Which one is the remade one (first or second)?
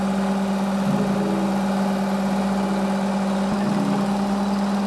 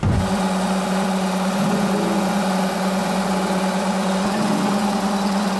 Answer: second